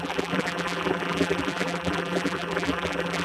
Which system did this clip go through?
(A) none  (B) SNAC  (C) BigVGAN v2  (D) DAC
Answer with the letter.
C